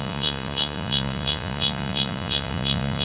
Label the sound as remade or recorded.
remade